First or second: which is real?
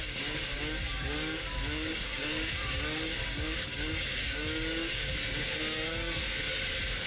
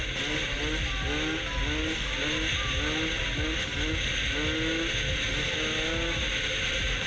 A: second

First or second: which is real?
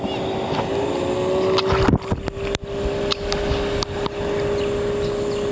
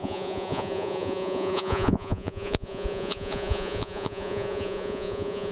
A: first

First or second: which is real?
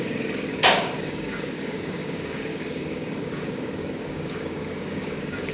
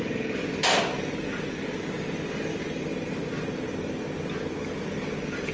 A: second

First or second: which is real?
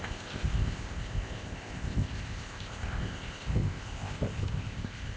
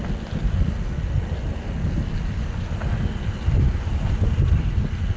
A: second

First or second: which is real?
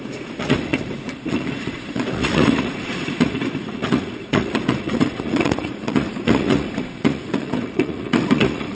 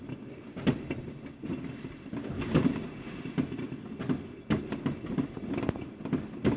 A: second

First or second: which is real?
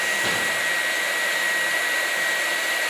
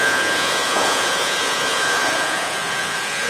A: first